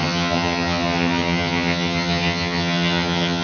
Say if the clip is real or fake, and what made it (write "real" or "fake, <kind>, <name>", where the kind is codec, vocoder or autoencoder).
fake, vocoder, HiFi-GAN